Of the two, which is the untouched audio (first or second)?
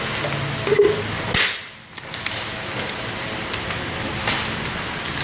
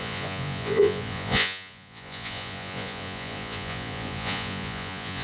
first